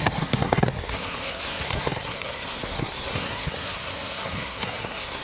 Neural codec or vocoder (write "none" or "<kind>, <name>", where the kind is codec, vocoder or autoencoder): codec, SNAC